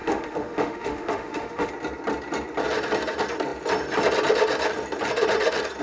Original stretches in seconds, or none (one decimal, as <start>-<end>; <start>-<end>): 1.7-5.8